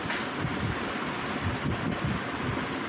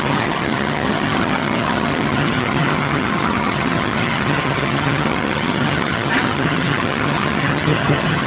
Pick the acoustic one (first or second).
first